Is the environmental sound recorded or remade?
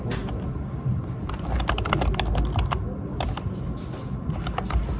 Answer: recorded